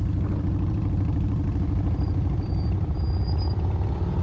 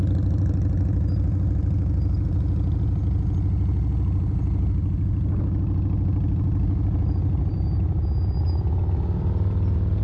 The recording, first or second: second